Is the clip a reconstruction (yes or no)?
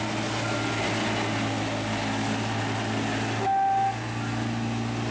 no